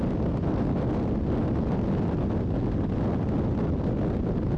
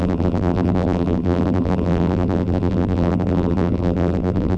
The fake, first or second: second